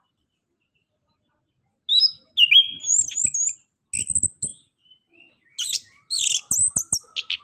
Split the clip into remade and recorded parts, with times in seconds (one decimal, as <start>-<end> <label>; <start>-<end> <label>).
0.0-7.4 recorded

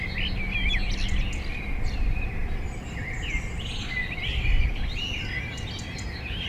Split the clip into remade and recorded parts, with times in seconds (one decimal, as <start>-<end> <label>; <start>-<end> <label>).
0.0-6.5 recorded